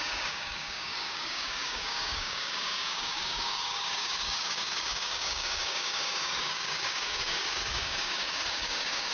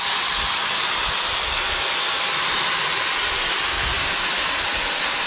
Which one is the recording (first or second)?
second